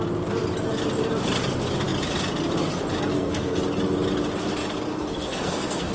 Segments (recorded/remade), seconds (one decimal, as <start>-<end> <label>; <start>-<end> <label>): 0.0-3.1 recorded; 3.1-3.6 remade; 3.6-4.9 recorded; 4.9-5.9 remade